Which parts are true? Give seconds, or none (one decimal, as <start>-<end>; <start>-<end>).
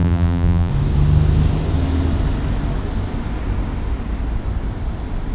0.7-5.3